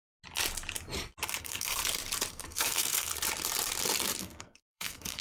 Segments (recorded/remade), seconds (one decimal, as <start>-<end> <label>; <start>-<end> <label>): 0.0-1.4 recorded; 1.4-1.8 remade; 1.8-2.3 recorded; 2.3-3.1 remade; 3.1-4.2 recorded; 4.2-5.2 remade